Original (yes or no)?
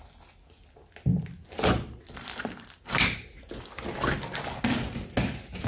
yes